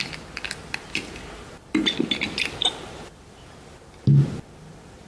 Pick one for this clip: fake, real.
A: real